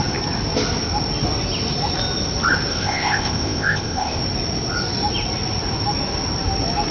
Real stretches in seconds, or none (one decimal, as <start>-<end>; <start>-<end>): 0.0-2.7; 4.2-6.9